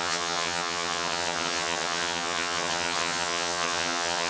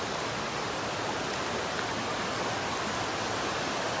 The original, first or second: second